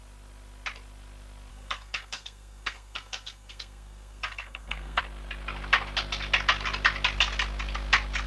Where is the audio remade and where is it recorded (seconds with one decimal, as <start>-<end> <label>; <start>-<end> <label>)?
0.0-1.5 recorded; 1.5-5.0 remade; 5.0-8.3 recorded